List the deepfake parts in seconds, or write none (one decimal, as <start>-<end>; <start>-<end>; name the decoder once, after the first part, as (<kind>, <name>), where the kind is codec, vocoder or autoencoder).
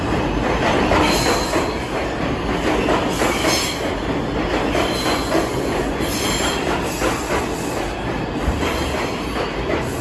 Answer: 5.1-6.0 (vocoder, Vocos)